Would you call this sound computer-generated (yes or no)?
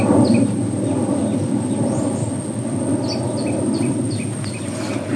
no